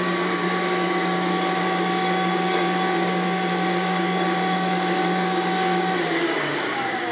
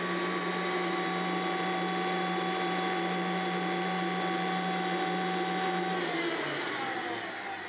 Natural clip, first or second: second